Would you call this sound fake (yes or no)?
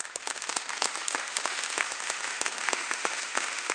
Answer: yes